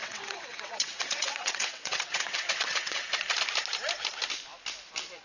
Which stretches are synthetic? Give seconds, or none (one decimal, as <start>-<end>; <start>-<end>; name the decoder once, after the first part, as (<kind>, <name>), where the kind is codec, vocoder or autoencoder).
0.0-3.1 (vocoder, WaveNeXt)